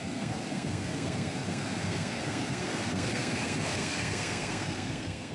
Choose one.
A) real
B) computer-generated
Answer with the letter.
B